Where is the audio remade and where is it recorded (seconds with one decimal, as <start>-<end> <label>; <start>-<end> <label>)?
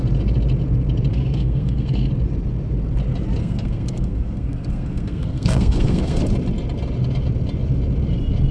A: 0.0-1.1 recorded; 1.1-2.1 remade; 2.1-3.4 recorded; 3.4-6.2 remade; 6.2-8.5 recorded